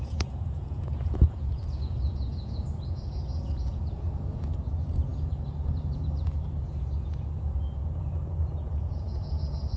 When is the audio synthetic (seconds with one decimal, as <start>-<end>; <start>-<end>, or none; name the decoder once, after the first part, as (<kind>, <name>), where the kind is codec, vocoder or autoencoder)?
0.0-9.8 (vocoder, Vocos)